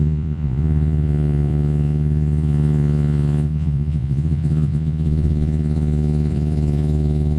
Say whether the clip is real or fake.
fake